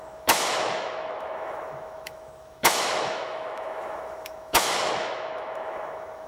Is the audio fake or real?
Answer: fake